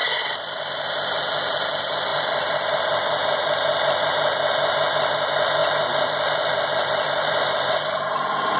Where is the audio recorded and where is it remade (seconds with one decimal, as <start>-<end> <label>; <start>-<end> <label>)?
0.0-1.2 remade; 1.2-2.1 recorded; 2.1-4.1 remade; 4.1-5.6 recorded; 5.6-7.7 remade; 7.7-8.6 recorded